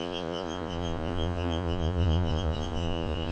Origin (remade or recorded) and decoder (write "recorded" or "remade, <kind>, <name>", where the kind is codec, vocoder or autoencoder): remade, vocoder, Vocos